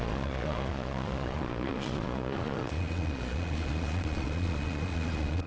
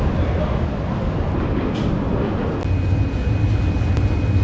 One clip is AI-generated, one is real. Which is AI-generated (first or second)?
first